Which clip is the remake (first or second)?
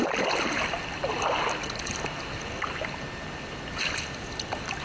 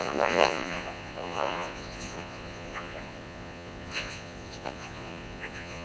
second